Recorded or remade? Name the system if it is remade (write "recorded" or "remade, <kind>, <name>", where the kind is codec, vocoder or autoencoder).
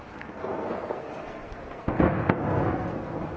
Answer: remade, codec, SNAC